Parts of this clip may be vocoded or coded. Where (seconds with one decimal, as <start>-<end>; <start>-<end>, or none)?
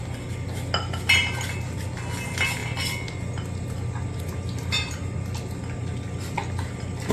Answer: none